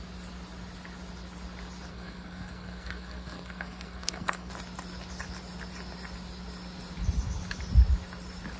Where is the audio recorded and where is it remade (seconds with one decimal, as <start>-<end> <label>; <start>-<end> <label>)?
0.0-1.9 recorded; 1.9-4.5 remade; 4.5-8.6 recorded